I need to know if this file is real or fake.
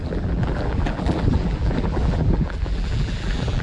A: fake